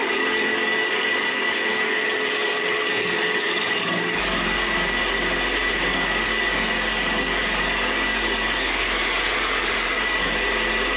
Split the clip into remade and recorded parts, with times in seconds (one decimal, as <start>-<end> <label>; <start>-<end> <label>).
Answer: 0.0-5.0 remade; 5.0-5.9 recorded; 5.9-10.3 remade; 10.3-11.0 recorded